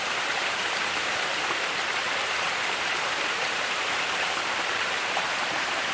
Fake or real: fake